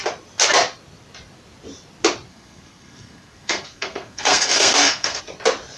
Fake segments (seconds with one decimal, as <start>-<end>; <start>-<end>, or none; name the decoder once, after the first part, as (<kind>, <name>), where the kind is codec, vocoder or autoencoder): 2.3-5.2 (codec, SNAC)